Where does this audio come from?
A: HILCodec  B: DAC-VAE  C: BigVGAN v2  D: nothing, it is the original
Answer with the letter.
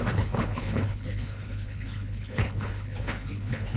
A